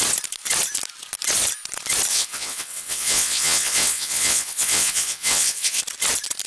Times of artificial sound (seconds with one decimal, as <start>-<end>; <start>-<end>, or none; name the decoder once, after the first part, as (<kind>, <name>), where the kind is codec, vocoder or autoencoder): 2.1-5.8 (vocoder, WaveNeXt)

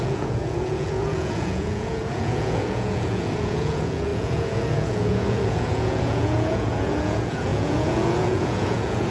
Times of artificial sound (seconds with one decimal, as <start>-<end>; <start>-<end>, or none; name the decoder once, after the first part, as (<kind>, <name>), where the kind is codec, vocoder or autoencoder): 0.0-9.1 (vocoder, Vocos)

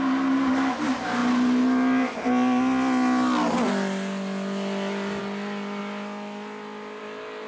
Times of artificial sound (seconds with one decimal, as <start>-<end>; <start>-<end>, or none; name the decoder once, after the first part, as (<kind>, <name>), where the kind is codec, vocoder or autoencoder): none

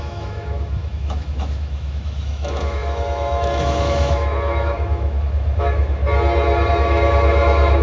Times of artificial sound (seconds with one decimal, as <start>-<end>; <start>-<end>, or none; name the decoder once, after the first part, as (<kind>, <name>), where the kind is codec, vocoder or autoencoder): 0.0-6.0 (autoencoder, DAC-VAE); 6.7-7.8